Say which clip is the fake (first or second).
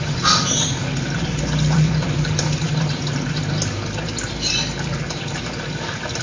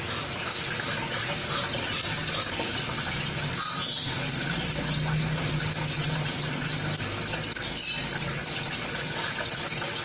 first